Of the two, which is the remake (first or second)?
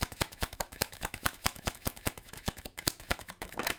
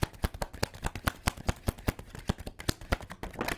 first